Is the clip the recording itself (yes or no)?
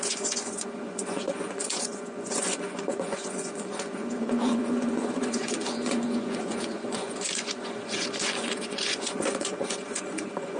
no